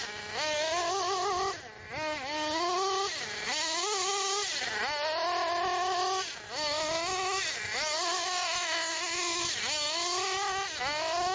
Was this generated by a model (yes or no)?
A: no